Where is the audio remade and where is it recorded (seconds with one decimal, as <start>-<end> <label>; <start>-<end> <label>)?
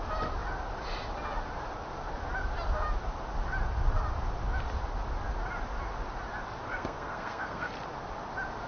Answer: 0.0-6.7 recorded; 6.7-7.7 remade; 7.7-8.7 recorded